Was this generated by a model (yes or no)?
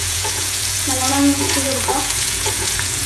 yes